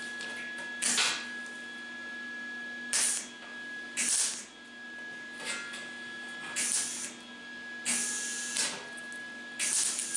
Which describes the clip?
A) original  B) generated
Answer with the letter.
A